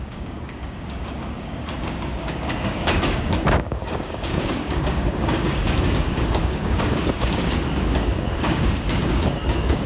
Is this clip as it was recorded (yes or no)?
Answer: no